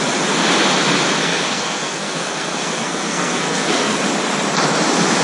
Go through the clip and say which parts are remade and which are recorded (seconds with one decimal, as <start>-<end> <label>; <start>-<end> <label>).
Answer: 0.0-1.2 recorded; 1.2-4.0 remade; 4.0-5.2 recorded

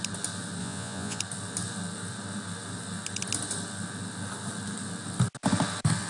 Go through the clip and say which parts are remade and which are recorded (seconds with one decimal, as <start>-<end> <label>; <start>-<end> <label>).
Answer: 0.0-0.6 recorded; 0.6-1.2 remade; 1.2-6.1 recorded

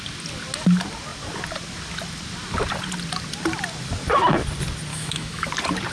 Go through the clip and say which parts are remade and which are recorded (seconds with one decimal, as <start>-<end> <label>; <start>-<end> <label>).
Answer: 0.0-4.9 recorded; 4.9-5.5 remade; 5.5-5.9 recorded